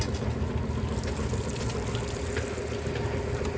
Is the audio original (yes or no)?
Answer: yes